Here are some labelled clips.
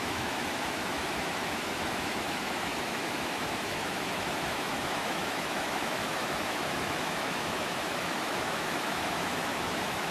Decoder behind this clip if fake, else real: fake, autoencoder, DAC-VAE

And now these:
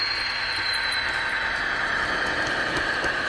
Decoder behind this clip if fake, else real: real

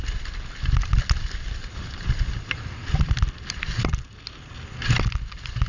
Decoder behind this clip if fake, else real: real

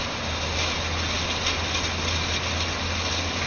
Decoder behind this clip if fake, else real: real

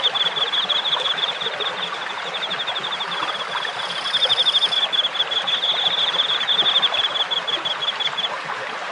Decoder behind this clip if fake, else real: real